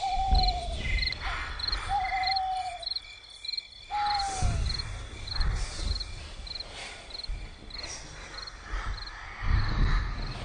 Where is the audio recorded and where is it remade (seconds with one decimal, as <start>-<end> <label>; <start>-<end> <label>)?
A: 0.0-1.4 recorded; 1.4-3.9 remade; 3.9-10.4 recorded